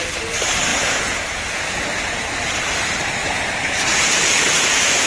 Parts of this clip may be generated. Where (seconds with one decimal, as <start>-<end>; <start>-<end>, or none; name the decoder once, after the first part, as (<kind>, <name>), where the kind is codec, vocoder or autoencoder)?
0.7-1.8 (vocoder, Vocos); 3.2-5.1